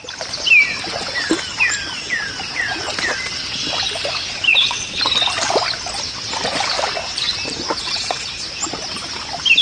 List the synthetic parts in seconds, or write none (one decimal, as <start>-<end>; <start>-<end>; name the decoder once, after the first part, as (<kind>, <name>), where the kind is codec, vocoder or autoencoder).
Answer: 4.5-5.0 (vocoder, WaveNeXt); 7.8-8.4